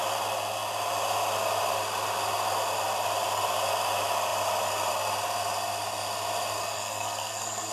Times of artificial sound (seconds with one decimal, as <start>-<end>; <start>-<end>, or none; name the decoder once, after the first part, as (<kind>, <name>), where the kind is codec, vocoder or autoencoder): 6.6-7.7 (codec, SNAC)